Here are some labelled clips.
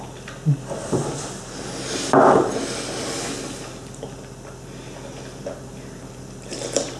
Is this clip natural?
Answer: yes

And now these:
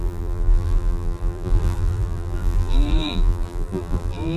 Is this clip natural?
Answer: no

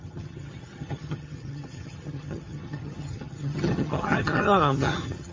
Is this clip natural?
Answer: no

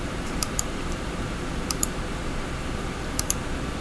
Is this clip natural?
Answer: no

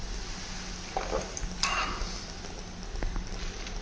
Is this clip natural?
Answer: yes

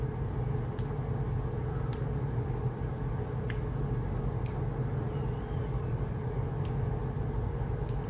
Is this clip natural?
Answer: yes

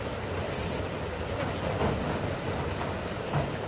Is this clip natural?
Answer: yes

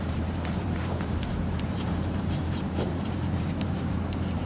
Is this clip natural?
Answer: no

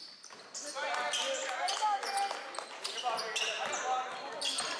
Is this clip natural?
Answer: yes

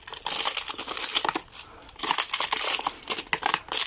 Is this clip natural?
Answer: yes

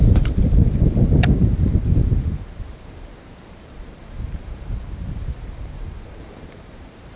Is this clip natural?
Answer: no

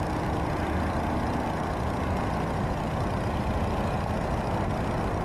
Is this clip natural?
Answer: yes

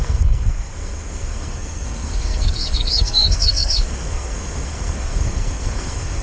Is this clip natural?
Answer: no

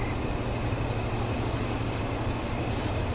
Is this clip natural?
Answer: yes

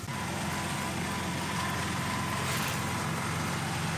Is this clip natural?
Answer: yes